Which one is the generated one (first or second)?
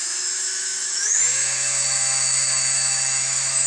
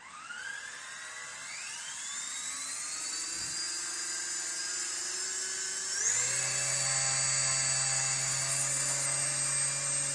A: first